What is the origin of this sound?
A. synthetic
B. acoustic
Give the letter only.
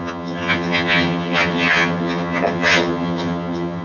A